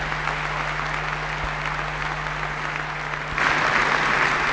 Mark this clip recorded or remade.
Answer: recorded